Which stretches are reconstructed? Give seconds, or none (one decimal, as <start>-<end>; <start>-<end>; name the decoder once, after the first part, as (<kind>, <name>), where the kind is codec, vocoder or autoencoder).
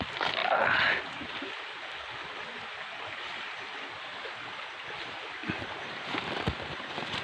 none